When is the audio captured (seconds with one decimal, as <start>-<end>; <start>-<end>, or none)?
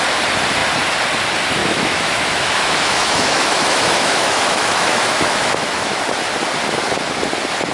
0.0-1.6; 6.0-7.7